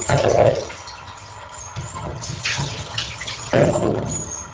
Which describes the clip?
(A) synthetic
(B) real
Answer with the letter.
A